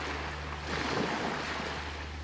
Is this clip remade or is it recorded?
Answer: recorded